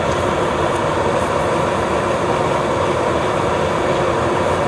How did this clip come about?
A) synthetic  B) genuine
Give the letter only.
B